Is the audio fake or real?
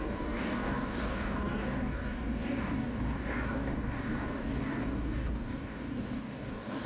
fake